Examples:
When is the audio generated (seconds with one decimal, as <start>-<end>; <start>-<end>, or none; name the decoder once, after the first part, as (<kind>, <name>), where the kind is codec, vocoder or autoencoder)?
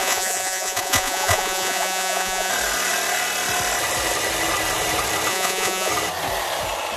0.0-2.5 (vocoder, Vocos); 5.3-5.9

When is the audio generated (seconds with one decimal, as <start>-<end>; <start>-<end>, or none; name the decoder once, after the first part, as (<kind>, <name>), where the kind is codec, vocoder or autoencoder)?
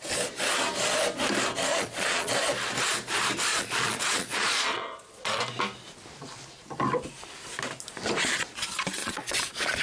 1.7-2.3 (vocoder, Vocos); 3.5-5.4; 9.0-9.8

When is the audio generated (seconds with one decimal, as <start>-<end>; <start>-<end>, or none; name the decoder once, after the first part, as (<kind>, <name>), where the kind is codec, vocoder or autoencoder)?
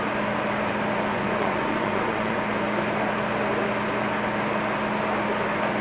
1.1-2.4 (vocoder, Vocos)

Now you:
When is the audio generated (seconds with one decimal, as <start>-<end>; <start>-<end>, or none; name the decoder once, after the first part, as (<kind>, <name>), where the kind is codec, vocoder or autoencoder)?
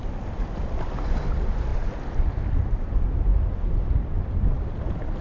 none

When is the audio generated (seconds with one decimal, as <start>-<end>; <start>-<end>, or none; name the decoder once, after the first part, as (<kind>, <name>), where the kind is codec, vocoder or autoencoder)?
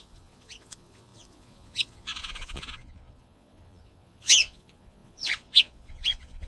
0.0-6.5 (vocoder, Vocos)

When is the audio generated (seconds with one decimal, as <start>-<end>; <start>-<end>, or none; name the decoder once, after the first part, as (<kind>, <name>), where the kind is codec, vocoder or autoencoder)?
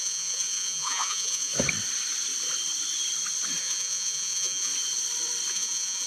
0.0-1.5 (vocoder, Vocos); 3.6-4.7; 5.5-6.1